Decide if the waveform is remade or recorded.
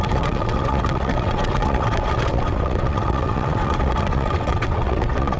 remade